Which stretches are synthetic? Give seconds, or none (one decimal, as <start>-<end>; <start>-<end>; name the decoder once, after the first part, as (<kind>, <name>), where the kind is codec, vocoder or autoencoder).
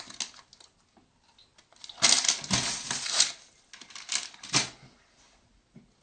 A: none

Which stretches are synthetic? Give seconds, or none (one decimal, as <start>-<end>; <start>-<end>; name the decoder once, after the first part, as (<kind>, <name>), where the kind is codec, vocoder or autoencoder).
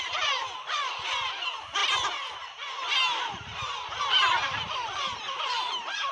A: 0.0-6.1 (vocoder, BigVGAN v2)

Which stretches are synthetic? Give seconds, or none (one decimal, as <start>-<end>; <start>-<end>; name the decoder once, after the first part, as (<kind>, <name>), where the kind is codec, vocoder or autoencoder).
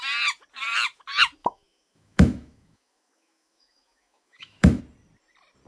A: 1.4-4.8 (autoencoder, DAC-VAE)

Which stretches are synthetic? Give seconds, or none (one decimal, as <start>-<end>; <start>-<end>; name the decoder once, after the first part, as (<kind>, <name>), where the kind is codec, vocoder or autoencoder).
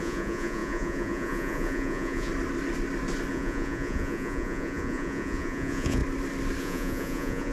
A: 0.0-2.3 (vocoder, Vocos); 3.3-6.0; 6.6-7.5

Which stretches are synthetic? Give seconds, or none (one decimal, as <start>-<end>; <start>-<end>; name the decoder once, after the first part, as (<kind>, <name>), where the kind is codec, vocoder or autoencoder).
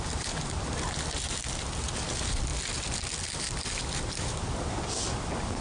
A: none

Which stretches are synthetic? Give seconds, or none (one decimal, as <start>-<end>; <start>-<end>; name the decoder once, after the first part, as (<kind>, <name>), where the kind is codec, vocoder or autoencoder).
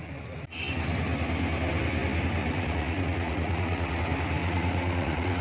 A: 2.4-4.0 (vocoder, Vocos); 4.4-5.4